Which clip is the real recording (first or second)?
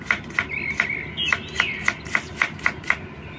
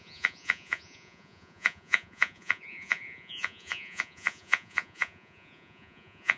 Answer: first